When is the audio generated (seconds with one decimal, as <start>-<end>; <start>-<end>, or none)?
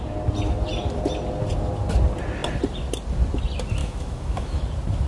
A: 3.8-4.6